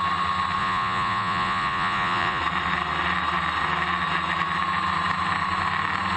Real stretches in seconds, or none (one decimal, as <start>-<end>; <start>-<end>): 0.0-0.6; 2.4-6.2